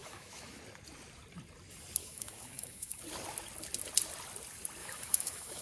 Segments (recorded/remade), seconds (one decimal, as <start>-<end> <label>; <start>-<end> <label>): 0.0-0.6 remade; 0.6-2.0 recorded; 2.0-3.0 remade; 3.0-4.8 recorded; 4.8-5.6 remade

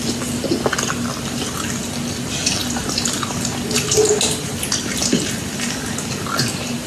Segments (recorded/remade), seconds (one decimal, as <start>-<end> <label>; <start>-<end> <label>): 0.0-6.9 recorded

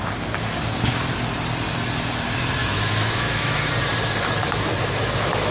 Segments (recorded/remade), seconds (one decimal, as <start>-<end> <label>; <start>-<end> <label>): 0.0-2.6 recorded; 2.6-3.7 remade; 3.7-4.4 recorded; 4.4-5.5 remade

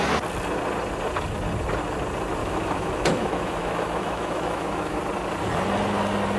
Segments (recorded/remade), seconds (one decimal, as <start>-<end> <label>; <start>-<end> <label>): 0.0-2.4 recorded; 2.4-5.0 remade; 5.0-6.4 recorded

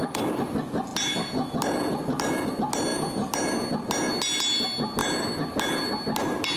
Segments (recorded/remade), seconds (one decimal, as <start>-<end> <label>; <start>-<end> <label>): 0.0-6.6 recorded

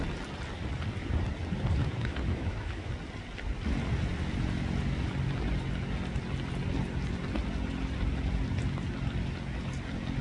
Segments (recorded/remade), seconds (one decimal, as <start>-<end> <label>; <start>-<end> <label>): 0.0-1.8 recorded; 1.8-2.9 remade; 2.9-10.2 recorded

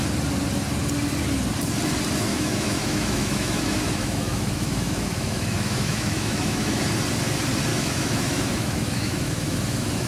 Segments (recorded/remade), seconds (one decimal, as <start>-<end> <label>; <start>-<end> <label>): 0.0-2.3 recorded; 2.3-6.8 remade; 6.8-7.7 recorded; 7.7-10.1 remade

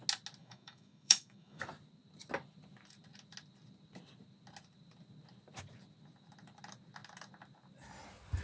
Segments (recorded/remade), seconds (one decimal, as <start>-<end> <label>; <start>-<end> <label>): 0.0-0.4 recorded; 0.4-1.6 remade; 1.6-8.4 recorded